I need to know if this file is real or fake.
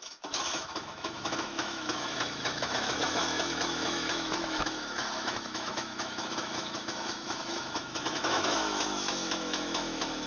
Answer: fake